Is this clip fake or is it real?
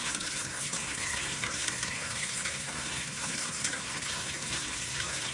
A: fake